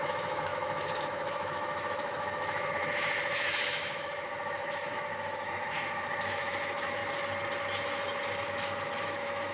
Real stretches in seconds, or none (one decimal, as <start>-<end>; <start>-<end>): 7.0-8.4